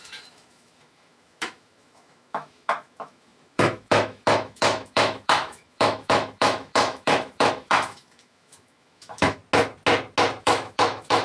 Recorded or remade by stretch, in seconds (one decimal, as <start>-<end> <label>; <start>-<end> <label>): 0.0-9.4 remade; 9.4-10.4 recorded; 10.4-11.2 remade